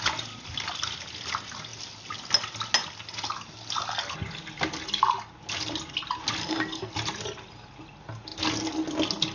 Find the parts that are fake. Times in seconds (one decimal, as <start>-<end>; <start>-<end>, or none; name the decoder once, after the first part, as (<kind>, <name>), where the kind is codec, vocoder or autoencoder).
6.4-6.9 (codec, SNAC)